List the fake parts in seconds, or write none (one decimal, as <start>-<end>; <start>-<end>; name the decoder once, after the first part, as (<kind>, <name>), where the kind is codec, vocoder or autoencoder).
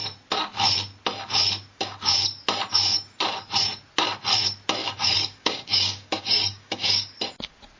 4.8-7.1 (codec, DAC)